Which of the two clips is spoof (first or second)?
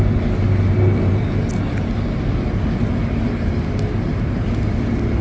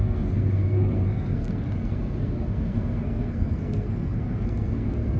second